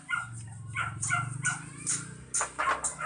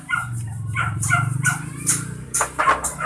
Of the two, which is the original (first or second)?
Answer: first